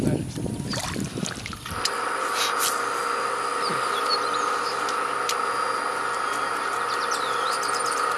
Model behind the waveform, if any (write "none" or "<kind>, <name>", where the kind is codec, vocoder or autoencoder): none